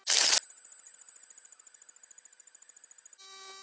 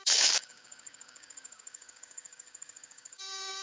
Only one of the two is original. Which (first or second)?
first